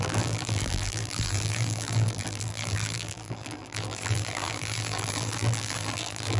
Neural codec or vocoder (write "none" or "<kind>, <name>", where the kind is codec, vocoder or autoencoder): vocoder, BigVGAN v2